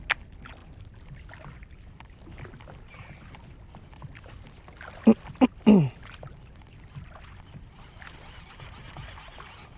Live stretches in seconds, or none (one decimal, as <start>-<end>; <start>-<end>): 0.0-9.8